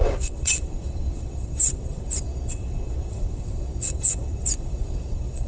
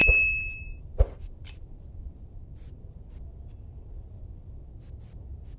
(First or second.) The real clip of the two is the second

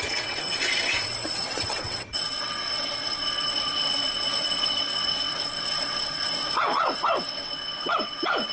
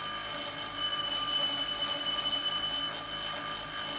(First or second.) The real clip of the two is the second